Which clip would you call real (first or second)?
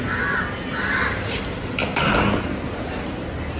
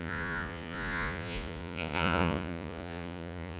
first